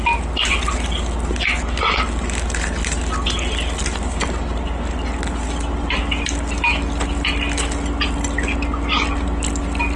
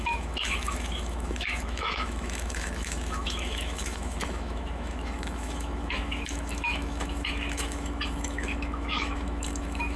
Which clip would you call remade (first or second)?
second